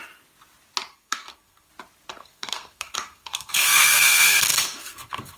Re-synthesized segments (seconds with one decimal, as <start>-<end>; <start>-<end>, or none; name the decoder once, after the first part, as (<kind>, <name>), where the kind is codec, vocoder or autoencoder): 0.9-1.7 (codec, SNAC); 2.2-5.4